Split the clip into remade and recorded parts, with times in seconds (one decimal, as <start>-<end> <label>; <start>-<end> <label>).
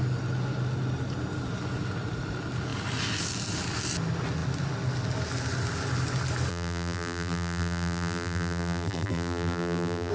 0.0-6.5 recorded; 6.5-10.1 remade